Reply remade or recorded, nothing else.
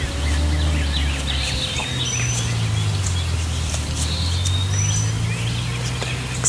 recorded